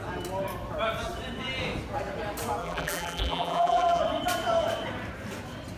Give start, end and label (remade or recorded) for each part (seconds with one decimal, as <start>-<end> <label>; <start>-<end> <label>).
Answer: 0.0-2.6 recorded; 2.6-4.0 remade; 4.0-5.8 recorded